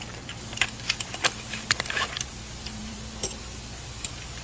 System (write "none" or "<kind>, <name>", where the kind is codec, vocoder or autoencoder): vocoder, BigVGAN v2